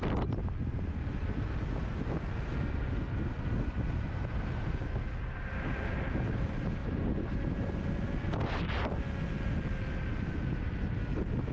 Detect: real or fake real